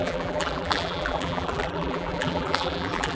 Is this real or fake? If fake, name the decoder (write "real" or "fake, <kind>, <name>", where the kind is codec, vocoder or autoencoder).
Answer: fake, vocoder, BigVGAN v2